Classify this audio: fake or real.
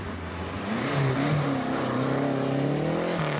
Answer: real